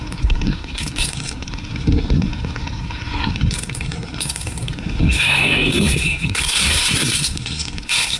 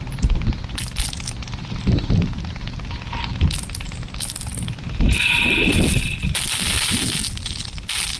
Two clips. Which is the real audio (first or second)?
second